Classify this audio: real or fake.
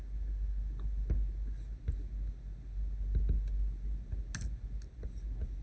real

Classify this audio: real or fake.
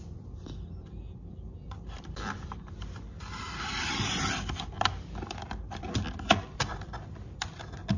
fake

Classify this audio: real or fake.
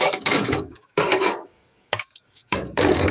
fake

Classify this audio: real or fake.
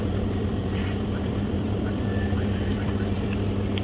fake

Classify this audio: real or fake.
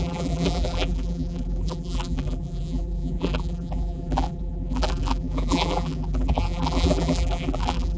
fake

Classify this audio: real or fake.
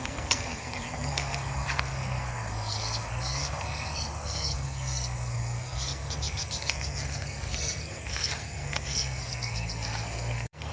fake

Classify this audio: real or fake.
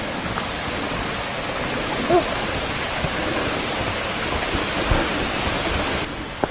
real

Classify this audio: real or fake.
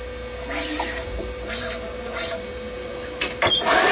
real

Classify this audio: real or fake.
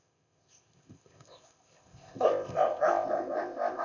fake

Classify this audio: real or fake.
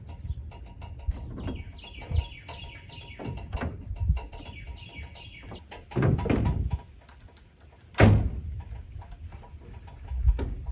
real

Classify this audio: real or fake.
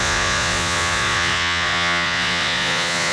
fake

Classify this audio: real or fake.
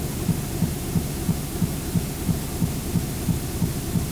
real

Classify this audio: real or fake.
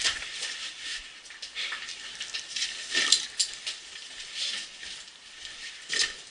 real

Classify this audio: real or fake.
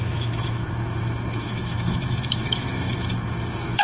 fake